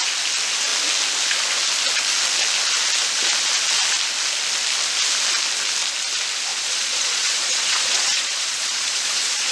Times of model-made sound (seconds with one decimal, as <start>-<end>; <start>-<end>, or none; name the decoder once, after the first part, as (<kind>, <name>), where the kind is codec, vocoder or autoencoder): 6.5-9.5 (vocoder, Vocos)